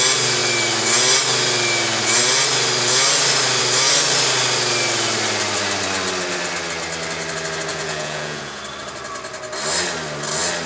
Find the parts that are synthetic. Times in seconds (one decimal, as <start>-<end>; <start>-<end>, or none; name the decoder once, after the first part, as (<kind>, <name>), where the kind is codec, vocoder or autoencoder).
7.7-8.6 (vocoder, Vocos)